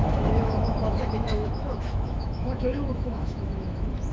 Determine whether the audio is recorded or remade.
remade